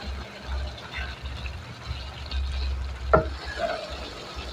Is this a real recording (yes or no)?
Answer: yes